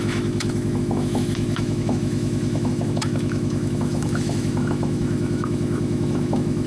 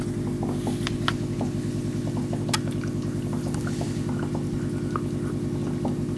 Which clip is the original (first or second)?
second